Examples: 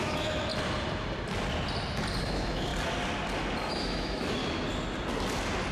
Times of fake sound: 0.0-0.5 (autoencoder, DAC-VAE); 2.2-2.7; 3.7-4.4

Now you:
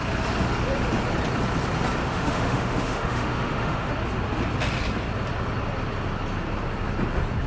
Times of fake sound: 2.0-3.9 (autoencoder, DAC-VAE)

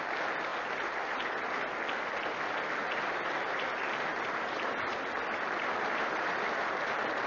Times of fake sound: none

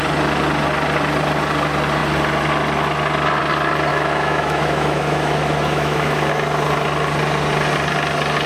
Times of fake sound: 3.9-6.3 (autoencoder, DAC-VAE)